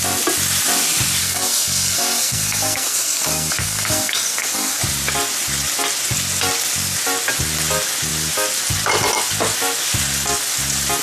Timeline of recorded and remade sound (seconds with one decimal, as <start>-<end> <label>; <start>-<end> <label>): 0.0-1.2 recorded; 1.2-4.8 remade; 4.8-11.0 recorded